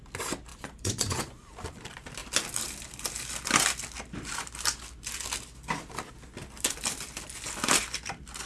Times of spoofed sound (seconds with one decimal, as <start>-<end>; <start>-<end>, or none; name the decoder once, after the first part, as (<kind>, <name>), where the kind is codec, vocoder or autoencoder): 0.5-1.5 (vocoder, Vocos)